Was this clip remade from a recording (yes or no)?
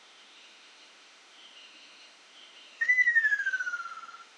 yes